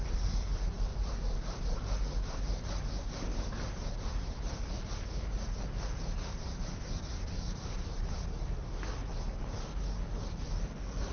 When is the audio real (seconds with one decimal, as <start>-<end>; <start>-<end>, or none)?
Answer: 0.0-11.1